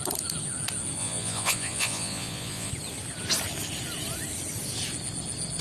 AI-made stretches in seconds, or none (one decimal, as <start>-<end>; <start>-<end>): 1.0-2.7